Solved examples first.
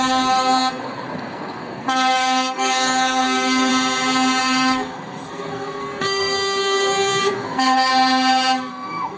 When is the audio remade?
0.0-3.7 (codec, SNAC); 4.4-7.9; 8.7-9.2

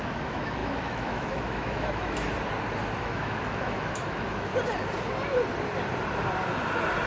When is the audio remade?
0.0-2.3 (autoencoder, DAC-VAE); 3.0-4.5